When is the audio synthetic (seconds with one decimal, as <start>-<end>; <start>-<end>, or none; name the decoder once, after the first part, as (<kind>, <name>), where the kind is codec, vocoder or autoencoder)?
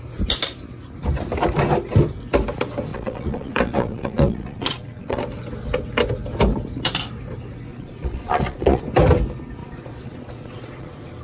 2.9-5.2 (vocoder, Vocos); 7.7-8.8; 9.6-11.2